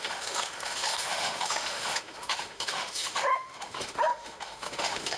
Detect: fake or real fake